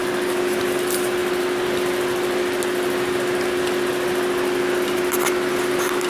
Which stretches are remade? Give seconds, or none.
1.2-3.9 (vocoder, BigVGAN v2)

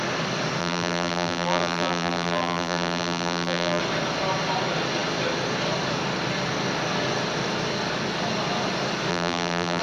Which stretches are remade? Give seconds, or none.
0.6-3.8 (vocoder, BigVGAN v2); 9.1-9.8

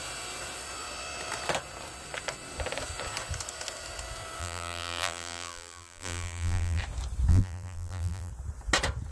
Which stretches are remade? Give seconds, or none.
4.4-6.8 (vocoder, BigVGAN v2); 7.3-8.3

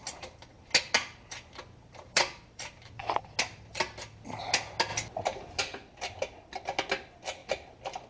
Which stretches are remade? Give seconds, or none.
1.0-3.0 (vocoder, BigVGAN v2)